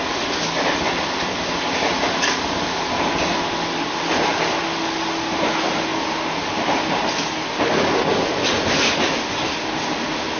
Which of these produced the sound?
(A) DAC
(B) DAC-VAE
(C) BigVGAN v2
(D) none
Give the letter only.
D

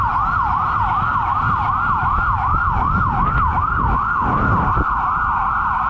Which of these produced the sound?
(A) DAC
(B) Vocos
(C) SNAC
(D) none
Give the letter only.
D